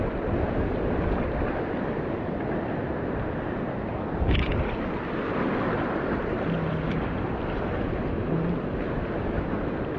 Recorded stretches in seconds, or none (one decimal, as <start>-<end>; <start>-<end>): 0.0-10.0